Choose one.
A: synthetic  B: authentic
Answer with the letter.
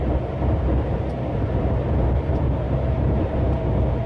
A